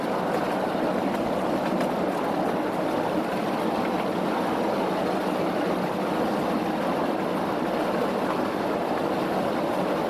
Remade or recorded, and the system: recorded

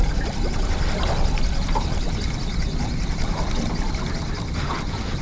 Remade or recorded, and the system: recorded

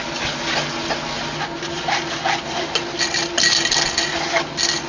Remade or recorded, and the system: recorded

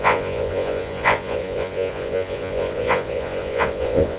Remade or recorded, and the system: remade, vocoder, Vocos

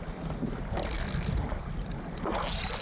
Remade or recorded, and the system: recorded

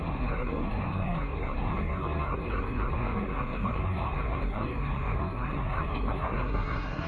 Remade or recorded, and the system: remade, codec, SNAC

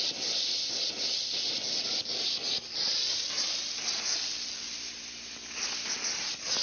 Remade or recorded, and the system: recorded